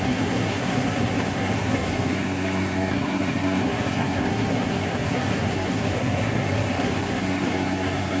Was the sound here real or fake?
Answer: fake